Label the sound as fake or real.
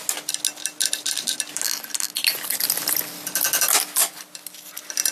real